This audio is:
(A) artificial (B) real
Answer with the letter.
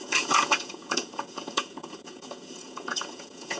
A